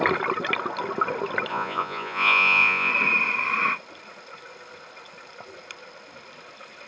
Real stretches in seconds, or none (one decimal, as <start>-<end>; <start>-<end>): 0.0-1.5; 2.9-6.9

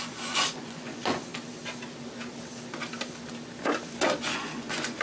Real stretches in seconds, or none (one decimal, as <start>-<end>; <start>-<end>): 1.3-4.3

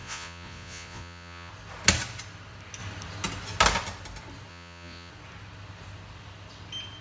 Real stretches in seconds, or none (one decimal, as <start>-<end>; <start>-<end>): 1.5-4.5; 5.1-7.0

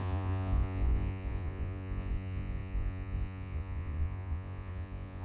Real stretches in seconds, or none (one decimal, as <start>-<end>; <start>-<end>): none

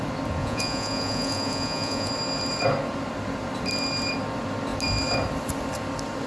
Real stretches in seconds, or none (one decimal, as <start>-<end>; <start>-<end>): 0.0-0.4; 2.1-6.3